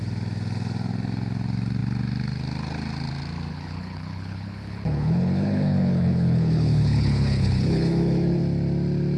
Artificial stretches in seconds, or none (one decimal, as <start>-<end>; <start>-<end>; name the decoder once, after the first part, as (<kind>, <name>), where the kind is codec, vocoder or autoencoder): 3.5-8.4 (codec, HILCodec)